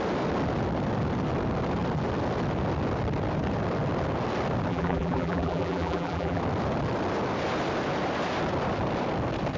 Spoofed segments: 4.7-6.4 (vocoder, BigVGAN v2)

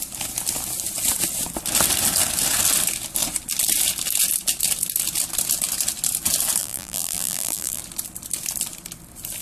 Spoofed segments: 6.6-7.8 (vocoder, BigVGAN v2)